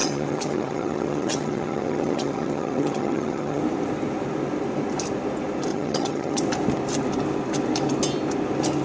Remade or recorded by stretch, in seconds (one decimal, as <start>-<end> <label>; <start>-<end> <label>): 0.0-3.6 remade; 3.6-5.7 recorded; 5.7-6.4 remade; 6.4-8.8 recorded

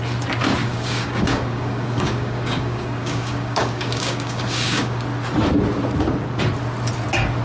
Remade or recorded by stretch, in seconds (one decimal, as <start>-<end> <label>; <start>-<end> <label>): 0.0-0.6 recorded; 0.6-5.0 remade; 5.0-7.4 recorded

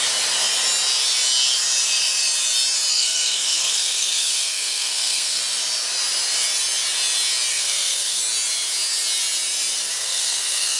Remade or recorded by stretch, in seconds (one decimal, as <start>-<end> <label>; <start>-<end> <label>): 0.0-2.9 recorded; 2.9-5.4 remade; 5.4-7.5 recorded; 7.5-8.2 remade; 8.2-10.0 recorded; 10.0-10.8 remade

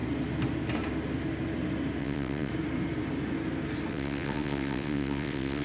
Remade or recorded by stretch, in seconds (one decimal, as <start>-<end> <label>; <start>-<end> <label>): 0.0-2.0 recorded; 2.0-2.5 remade; 2.5-3.9 recorded; 3.9-5.6 remade

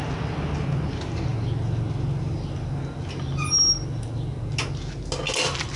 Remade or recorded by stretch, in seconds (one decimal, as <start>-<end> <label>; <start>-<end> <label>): 0.0-5.8 recorded

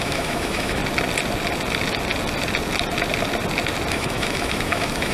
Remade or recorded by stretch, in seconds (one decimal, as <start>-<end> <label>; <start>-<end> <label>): 0.0-0.8 remade; 0.8-3.9 recorded; 3.9-5.1 remade

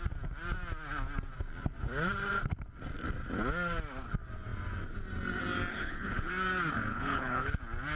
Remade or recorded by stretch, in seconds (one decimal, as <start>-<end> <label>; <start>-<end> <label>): 0.0-5.7 recorded; 5.7-6.3 remade; 6.3-6.9 recorded; 6.9-7.6 remade; 7.6-8.0 recorded